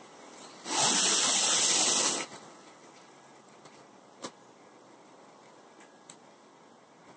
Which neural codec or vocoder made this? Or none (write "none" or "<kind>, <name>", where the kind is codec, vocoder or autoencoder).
none